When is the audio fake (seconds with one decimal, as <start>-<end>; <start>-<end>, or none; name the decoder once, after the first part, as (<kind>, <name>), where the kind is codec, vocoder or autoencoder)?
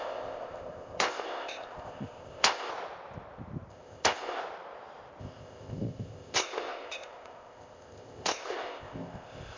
0.0-2.7 (codec, ZipCodec); 3.7-4.4; 5.2-9.6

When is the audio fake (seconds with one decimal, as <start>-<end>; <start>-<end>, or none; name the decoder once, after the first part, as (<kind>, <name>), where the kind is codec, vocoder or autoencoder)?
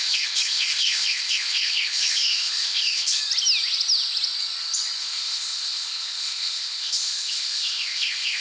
0.0-3.2 (codec, ZipCodec); 5.0-8.4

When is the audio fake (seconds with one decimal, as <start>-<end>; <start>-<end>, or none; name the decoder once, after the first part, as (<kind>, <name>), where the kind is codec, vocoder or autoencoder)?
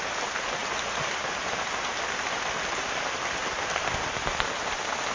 none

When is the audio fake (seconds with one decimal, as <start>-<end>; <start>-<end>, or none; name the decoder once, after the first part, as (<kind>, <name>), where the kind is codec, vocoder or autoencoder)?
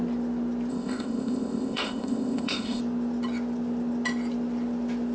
0.7-2.8 (codec, ZipCodec)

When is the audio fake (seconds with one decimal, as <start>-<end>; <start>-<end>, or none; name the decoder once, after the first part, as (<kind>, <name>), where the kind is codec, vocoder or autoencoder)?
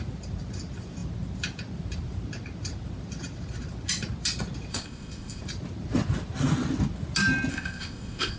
4.7-5.4 (codec, ZipCodec); 7.5-8.4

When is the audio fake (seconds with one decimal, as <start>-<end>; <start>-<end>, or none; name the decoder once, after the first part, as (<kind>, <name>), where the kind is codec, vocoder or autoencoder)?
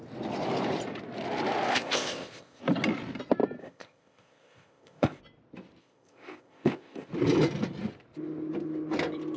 1.7-2.6 (codec, ZipCodec); 3.6-5.2; 5.8-7.1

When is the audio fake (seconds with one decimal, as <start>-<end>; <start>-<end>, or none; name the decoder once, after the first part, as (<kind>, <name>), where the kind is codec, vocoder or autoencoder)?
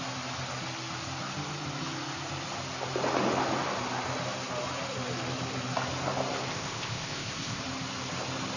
6.5-7.6 (codec, ZipCodec)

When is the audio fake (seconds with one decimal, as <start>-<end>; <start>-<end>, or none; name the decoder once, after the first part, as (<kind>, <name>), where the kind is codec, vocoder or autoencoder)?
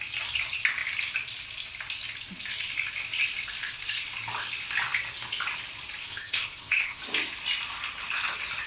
6.0-7.0 (codec, ZipCodec)